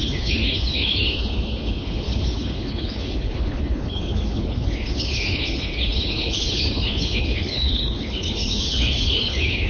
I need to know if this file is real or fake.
fake